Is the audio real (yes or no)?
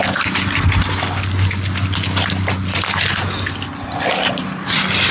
yes